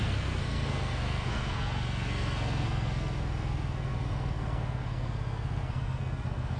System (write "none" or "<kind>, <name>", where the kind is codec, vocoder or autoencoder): codec, SNAC